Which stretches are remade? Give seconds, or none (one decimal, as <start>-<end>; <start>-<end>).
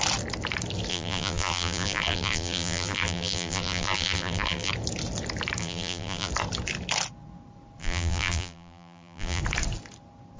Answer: 0.9-4.7; 5.6-6.3; 7.8-9.4